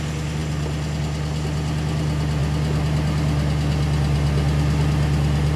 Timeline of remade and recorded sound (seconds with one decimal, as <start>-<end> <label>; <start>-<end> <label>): 0.0-5.6 recorded